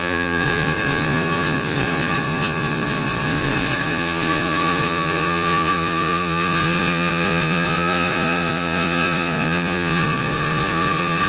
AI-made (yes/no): yes